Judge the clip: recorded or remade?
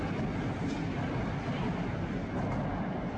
recorded